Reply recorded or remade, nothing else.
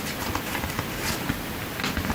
recorded